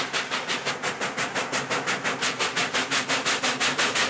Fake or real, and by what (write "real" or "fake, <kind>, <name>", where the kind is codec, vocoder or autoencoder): real